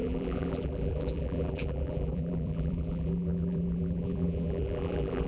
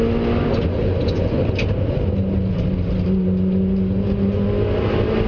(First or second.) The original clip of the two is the second